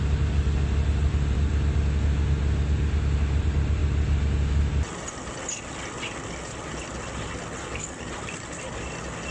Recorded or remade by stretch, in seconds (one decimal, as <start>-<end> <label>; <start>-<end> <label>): 0.0-9.3 recorded